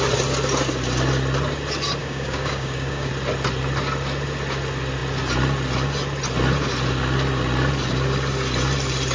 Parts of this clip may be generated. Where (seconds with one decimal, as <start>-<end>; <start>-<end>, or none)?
2.0-3.1